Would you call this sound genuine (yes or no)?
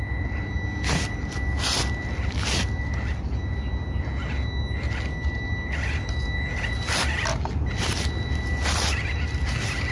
yes